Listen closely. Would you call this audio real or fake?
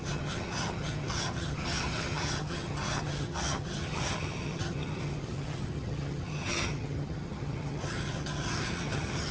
fake